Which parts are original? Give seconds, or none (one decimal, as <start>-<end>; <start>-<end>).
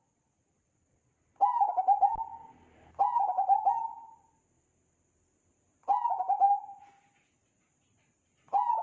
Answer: 0.0-8.8